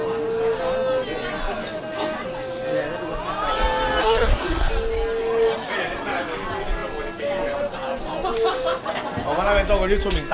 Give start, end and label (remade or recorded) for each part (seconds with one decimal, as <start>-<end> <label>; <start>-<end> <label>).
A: 0.0-4.0 recorded; 4.0-4.7 remade; 4.7-10.3 recorded